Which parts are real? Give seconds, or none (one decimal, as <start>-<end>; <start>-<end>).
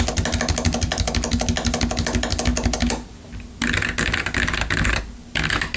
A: 0.0-5.8